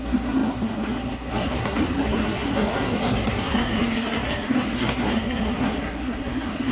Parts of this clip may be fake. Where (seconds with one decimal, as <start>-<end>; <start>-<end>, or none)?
0.0-6.7